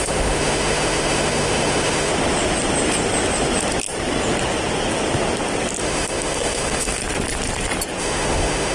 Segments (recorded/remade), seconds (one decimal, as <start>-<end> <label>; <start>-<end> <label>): 0.0-2.1 remade; 2.1-5.8 recorded; 5.8-7.0 remade; 7.0-8.0 recorded; 8.0-8.7 remade